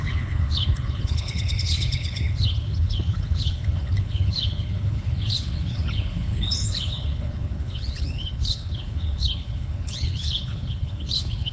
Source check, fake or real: fake